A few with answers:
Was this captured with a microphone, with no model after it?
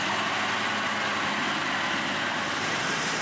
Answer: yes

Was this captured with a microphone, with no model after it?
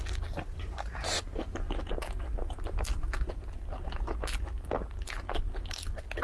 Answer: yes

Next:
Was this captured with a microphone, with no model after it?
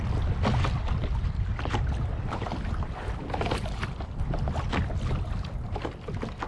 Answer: yes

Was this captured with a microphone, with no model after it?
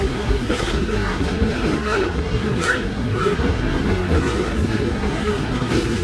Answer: no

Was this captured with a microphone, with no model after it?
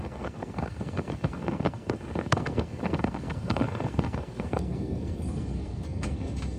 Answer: no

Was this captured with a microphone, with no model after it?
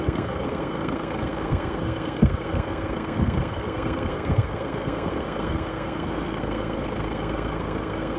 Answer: no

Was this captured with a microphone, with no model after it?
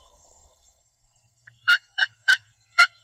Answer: no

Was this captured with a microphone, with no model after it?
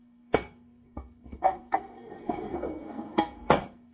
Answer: no